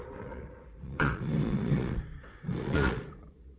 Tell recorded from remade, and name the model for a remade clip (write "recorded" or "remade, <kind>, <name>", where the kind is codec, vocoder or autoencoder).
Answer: remade, vocoder, Vocos